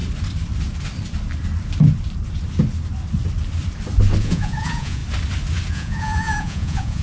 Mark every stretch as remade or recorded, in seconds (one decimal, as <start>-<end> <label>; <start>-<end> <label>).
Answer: 0.0-4.2 recorded; 4.2-5.0 remade; 5.0-5.7 recorded; 5.7-7.0 remade